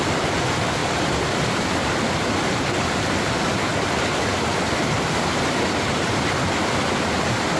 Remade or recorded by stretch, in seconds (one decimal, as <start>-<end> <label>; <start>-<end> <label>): 0.0-7.6 recorded